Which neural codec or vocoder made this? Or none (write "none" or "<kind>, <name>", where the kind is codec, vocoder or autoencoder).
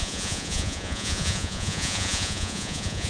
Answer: vocoder, Vocos